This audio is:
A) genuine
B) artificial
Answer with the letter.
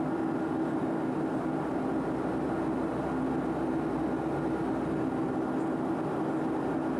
A